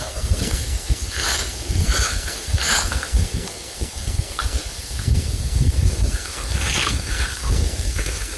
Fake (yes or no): yes